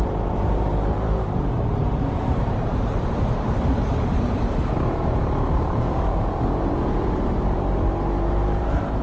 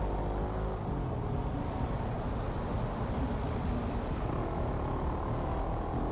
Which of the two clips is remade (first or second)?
first